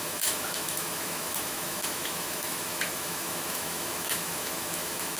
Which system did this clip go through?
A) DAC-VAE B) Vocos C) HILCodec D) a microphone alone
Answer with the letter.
A